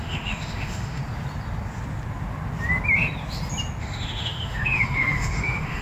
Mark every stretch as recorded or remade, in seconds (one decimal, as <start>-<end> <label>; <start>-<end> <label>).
0.0-1.0 remade; 1.0-3.8 recorded; 3.8-5.8 remade